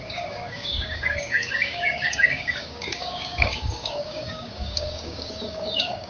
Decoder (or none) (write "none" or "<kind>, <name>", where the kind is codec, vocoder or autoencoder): codec, DAC